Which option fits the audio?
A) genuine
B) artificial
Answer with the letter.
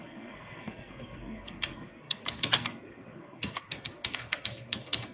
B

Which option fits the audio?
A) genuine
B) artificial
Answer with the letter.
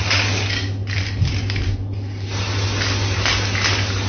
A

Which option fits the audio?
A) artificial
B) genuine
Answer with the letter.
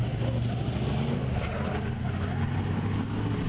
B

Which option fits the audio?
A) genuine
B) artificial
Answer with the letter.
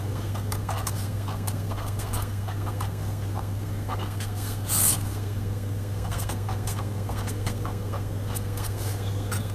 B